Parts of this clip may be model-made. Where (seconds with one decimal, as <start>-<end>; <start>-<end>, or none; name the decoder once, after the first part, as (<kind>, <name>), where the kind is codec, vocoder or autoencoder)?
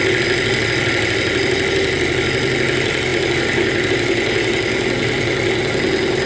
none